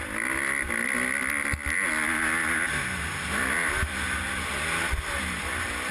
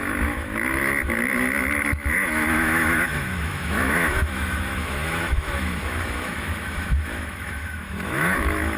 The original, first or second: first